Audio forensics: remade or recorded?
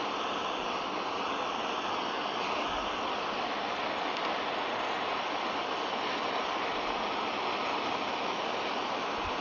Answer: recorded